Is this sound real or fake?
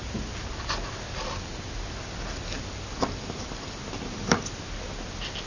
real